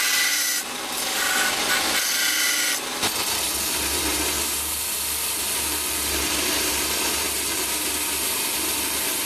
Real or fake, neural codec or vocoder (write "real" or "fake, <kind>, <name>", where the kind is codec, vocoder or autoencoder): real